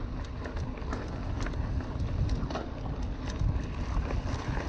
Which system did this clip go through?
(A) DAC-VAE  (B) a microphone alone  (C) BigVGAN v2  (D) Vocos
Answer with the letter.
B